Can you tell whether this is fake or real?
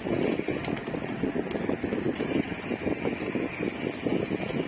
real